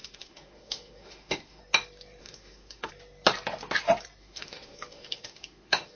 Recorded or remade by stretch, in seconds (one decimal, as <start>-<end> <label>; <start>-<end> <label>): 0.0-1.6 remade; 1.6-2.2 recorded; 2.2-2.9 remade; 2.9-4.2 recorded; 4.2-6.0 remade